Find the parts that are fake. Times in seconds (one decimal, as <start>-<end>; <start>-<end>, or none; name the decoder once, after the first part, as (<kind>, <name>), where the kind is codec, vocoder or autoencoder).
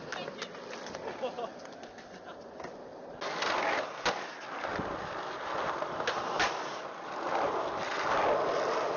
none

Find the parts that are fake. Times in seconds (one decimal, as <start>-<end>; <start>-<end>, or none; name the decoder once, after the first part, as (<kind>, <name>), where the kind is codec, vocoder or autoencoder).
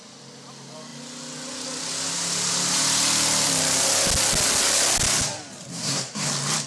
5.7-6.3 (codec, SNAC)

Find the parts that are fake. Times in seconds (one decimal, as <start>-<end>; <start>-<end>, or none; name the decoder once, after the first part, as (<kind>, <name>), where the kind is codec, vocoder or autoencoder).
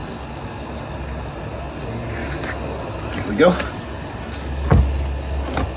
none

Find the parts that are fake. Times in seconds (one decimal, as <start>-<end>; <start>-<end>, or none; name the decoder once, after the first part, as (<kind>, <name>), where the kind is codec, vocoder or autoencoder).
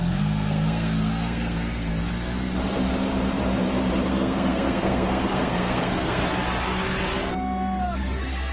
0.0-1.9 (codec, SNAC); 4.1-6.2; 7.3-8.5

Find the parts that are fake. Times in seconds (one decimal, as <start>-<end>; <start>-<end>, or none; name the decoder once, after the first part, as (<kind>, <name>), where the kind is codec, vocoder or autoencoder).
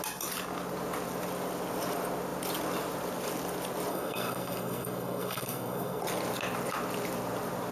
3.9-6.0 (codec, SNAC)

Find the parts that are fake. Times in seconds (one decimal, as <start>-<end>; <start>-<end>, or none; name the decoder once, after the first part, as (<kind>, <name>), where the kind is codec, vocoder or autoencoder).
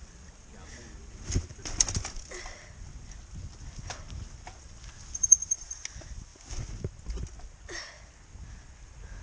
none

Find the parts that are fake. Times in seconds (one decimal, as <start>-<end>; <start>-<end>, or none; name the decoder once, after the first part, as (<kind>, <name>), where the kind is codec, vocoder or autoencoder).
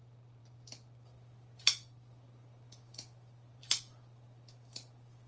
none